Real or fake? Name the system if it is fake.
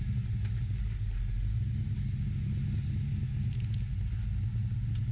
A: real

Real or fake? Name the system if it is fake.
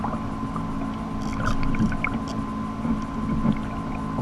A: real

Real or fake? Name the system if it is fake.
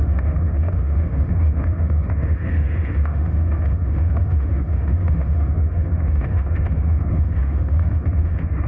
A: fake, autoencoder, DAC-VAE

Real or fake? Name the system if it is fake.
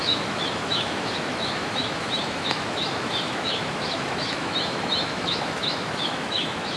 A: fake, autoencoder, DAC-VAE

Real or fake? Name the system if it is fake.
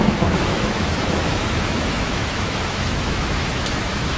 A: fake, autoencoder, DAC-VAE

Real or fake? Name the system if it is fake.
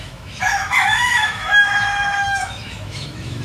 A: fake, autoencoder, DAC-VAE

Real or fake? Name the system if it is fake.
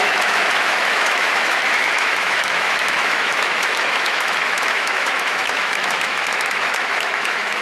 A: fake, autoencoder, DAC-VAE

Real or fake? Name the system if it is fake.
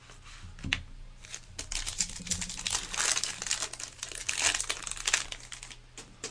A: real